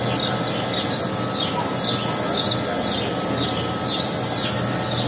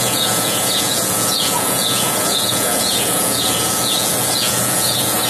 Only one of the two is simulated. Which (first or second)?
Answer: second